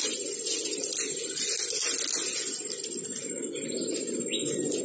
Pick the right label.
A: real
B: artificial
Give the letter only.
A